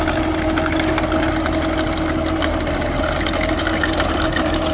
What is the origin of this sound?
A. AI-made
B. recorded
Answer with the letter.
B